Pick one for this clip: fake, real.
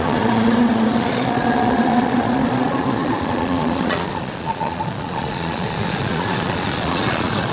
fake